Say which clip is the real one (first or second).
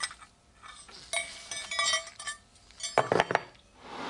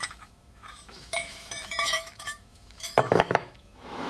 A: first